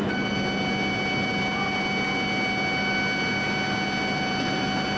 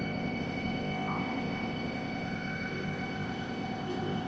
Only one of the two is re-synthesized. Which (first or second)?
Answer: second